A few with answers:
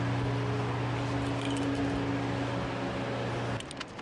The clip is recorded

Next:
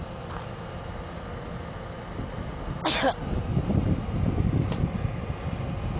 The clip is recorded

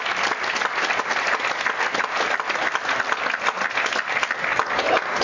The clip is recorded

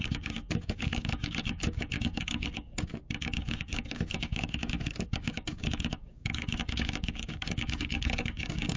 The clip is remade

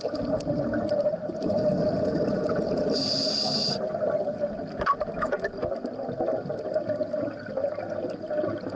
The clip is recorded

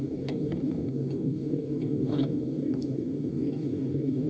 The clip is remade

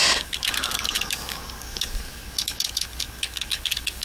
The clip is remade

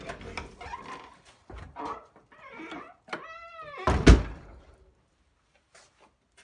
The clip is recorded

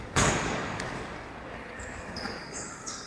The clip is remade